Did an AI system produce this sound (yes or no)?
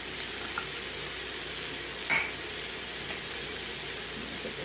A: no